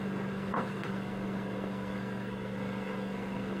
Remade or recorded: remade